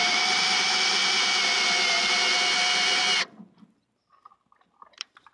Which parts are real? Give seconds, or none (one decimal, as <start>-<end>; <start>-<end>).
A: 1.0-4.2